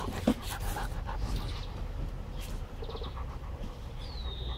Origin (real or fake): real